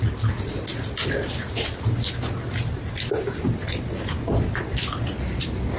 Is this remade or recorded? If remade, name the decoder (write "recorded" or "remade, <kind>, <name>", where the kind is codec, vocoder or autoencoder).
recorded